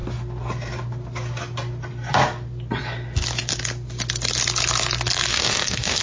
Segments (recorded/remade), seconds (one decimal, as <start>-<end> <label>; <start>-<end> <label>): 0.0-5.3 recorded; 5.3-6.0 remade